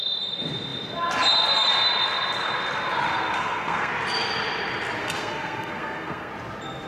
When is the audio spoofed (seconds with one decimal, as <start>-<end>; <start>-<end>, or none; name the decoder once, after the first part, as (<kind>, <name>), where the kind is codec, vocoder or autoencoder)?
3.1-3.9 (codec, SNAC); 5.0-6.3